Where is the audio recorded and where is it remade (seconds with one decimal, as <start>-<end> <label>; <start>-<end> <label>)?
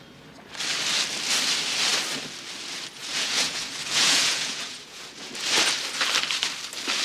0.0-3.0 recorded; 3.0-5.3 remade; 5.3-7.0 recorded